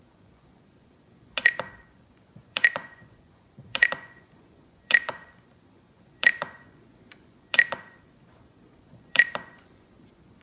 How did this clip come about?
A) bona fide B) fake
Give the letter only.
B